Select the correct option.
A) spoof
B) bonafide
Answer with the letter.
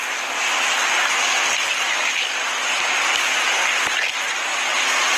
B